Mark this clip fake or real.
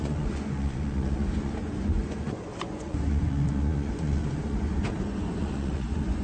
fake